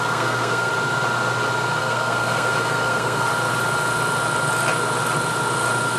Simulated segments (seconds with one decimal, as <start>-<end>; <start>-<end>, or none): 0.0-0.7; 1.8-3.3